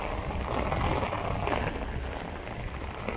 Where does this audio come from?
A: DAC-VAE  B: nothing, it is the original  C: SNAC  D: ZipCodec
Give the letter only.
B